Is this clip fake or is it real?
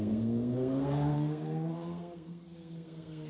fake